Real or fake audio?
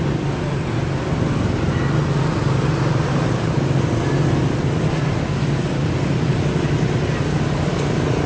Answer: real